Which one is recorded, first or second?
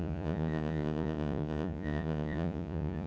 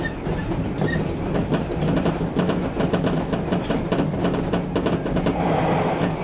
second